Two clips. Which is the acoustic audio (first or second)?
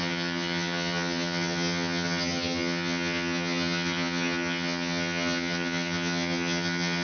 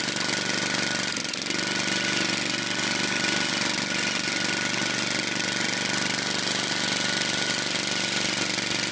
second